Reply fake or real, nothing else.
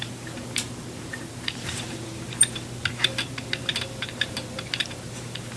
fake